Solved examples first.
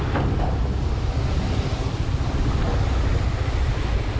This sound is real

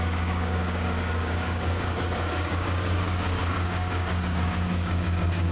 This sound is fake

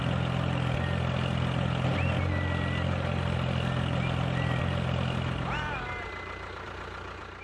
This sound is real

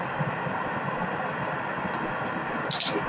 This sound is real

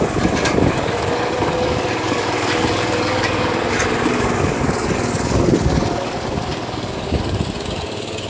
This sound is fake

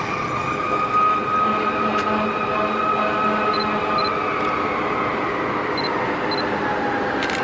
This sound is real